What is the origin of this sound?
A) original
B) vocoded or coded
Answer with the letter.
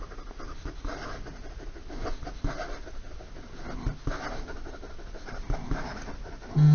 A